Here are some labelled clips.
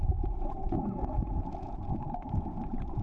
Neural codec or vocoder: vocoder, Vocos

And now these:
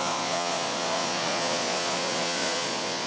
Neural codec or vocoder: vocoder, Vocos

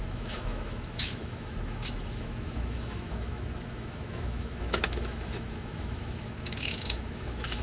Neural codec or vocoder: autoencoder, DAC-VAE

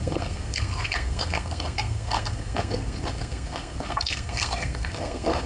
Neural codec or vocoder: codec, SNAC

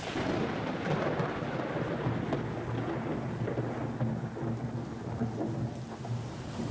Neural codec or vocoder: none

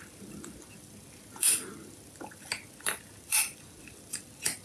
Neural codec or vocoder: vocoder, BigVGAN v2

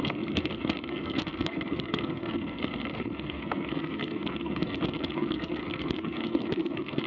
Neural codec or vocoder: codec, SNAC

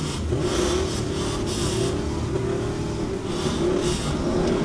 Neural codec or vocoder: none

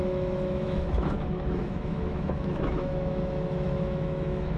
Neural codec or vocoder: autoencoder, DAC-VAE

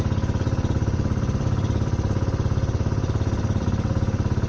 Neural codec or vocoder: vocoder, BigVGAN v2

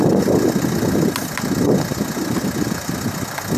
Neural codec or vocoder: none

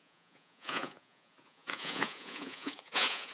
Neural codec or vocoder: vocoder, Vocos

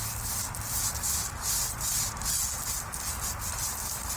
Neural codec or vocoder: none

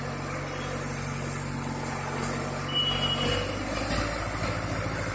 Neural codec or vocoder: none